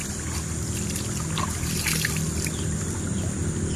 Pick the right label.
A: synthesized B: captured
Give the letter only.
B